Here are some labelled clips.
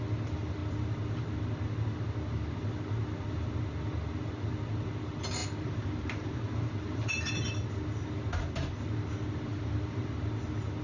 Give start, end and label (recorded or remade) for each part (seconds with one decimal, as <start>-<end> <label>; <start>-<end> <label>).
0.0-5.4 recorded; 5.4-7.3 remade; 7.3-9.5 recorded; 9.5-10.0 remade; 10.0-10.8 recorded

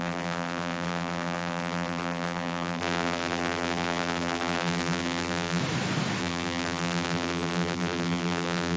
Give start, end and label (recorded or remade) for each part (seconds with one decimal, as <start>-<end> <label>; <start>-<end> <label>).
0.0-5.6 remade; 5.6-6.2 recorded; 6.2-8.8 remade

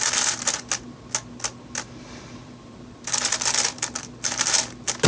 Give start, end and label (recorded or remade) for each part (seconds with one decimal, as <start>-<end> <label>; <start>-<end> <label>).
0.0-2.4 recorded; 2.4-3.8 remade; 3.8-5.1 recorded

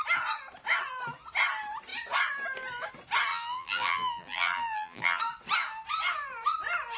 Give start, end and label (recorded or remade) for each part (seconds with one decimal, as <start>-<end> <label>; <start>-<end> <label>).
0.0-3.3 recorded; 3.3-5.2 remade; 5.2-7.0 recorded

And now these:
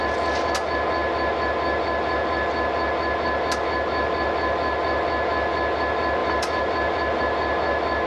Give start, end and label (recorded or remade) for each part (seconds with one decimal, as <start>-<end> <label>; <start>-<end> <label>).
0.0-6.2 recorded; 6.2-7.2 remade; 7.2-8.1 recorded

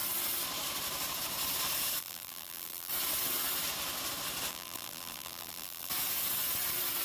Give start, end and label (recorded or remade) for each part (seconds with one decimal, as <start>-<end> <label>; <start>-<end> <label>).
0.0-2.0 recorded; 2.0-2.9 remade; 2.9-4.5 recorded; 4.5-5.9 remade; 5.9-7.0 recorded

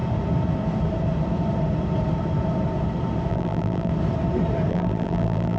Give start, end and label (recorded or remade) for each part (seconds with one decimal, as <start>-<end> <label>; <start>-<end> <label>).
0.0-3.3 recorded; 3.3-3.9 remade; 3.9-4.7 recorded; 4.7-5.6 remade